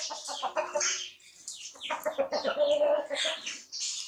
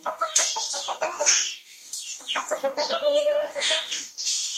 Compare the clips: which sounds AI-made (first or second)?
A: second